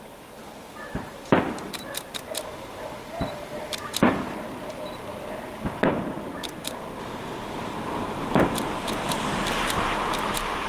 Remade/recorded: remade